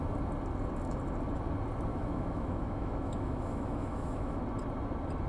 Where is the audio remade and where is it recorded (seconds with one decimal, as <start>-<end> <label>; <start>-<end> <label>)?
0.0-1.9 recorded; 1.9-4.4 remade; 4.4-5.3 recorded